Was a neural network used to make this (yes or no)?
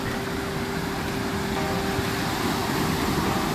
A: no